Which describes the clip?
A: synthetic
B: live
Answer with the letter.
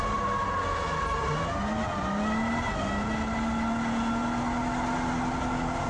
B